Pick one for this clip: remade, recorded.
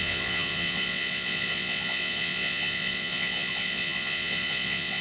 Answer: remade